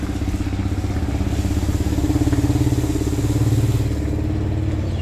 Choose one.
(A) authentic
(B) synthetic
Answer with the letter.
A